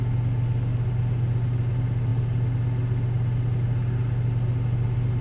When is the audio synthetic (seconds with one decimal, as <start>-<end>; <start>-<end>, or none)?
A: none